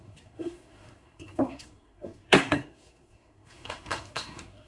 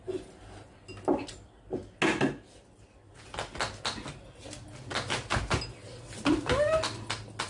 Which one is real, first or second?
second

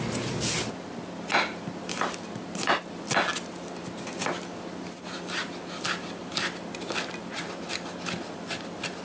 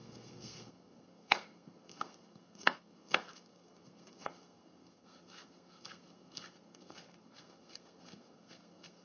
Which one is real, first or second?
first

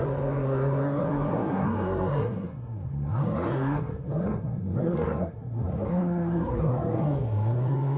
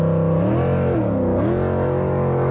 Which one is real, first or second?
second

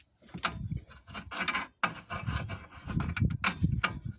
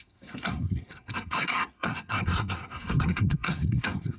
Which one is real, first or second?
first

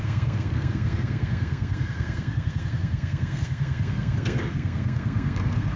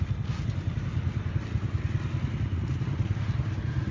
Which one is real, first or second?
second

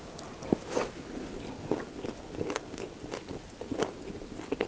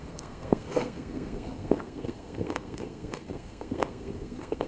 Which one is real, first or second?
first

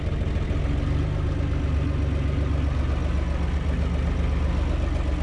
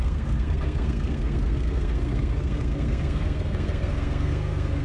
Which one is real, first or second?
first